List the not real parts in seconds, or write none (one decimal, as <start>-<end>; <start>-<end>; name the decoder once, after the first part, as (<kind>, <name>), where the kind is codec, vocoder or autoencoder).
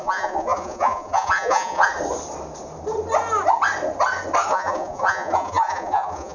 0.0-1.9 (vocoder, Vocos); 4.5-6.3